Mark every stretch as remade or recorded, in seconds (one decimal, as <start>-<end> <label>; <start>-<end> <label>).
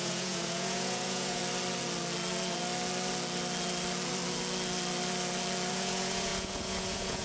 0.0-1.4 remade; 1.4-5.7 recorded; 5.7-7.2 remade